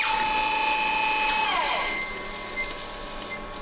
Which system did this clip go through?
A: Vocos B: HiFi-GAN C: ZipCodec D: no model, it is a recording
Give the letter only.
D